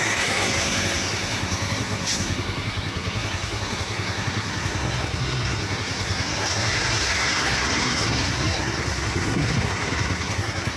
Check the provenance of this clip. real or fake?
fake